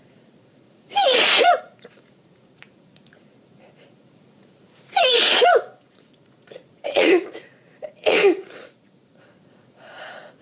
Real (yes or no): no